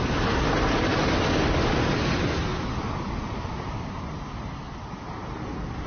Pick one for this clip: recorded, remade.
recorded